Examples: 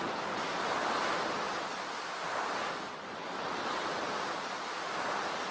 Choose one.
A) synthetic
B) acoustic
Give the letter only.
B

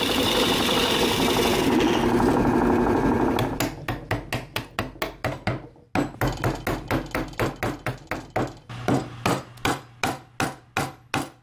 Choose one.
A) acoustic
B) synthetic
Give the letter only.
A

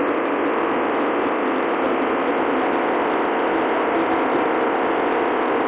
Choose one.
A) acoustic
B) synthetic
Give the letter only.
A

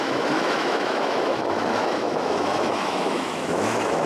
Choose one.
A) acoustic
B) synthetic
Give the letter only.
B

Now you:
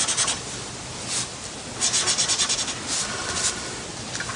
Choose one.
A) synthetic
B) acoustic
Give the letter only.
B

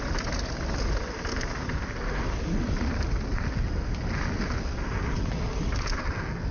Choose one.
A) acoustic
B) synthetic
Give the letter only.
A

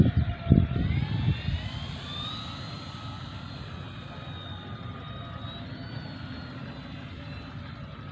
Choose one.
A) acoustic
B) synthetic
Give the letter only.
A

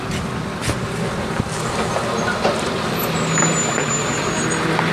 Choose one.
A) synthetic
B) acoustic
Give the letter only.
B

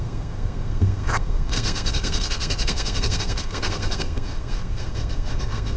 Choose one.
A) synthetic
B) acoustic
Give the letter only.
A